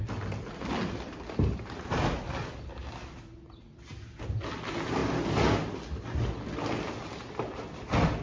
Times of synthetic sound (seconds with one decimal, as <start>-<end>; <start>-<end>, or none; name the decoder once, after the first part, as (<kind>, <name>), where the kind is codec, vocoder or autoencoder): none